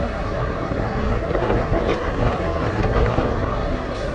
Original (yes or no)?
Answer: no